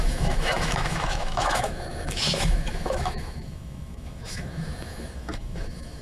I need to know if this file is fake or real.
fake